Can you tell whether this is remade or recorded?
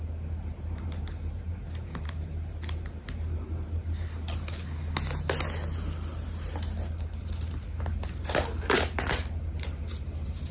recorded